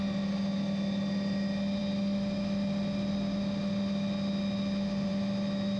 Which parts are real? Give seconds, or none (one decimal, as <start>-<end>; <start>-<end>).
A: 0.0-5.8